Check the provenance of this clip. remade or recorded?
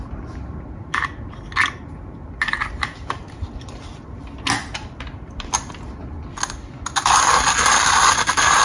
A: recorded